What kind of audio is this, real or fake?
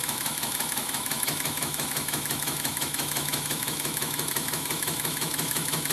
fake